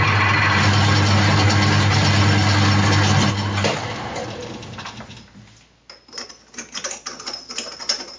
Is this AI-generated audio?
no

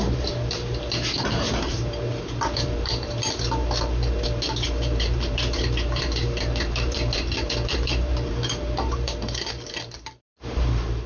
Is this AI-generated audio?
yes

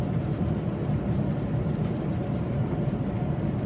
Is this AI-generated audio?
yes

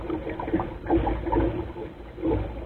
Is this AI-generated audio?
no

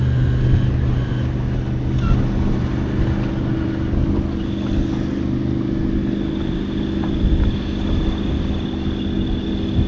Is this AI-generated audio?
no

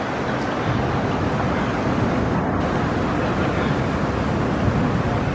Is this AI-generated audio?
no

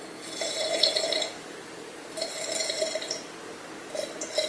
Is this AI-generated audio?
yes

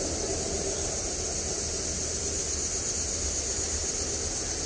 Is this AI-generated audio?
no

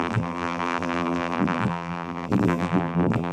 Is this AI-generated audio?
yes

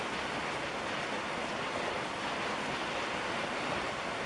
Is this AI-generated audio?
no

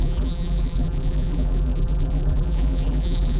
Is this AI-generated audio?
yes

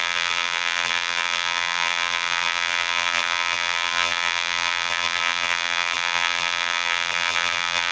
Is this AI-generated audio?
yes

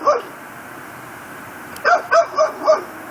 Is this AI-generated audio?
no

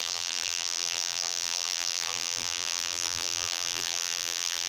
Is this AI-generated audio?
yes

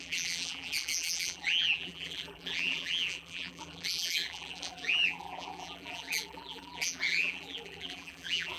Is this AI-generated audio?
yes